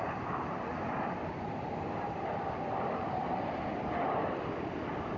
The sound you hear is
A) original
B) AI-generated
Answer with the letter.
A